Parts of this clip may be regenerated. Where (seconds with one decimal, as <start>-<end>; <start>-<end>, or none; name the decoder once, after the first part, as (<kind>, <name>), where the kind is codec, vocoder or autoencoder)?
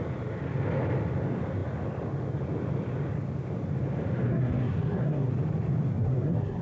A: 4.3-5.3 (codec, SNAC); 5.9-6.6